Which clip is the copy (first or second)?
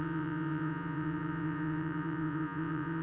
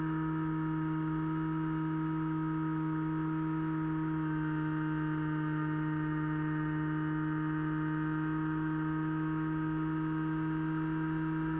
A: first